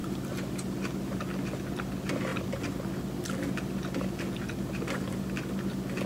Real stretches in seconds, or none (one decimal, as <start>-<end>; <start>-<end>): 1.2-6.1